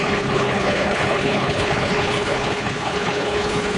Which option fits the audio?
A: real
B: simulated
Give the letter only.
B